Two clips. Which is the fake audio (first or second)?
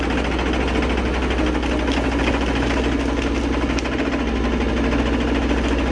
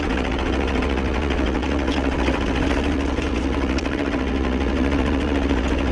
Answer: second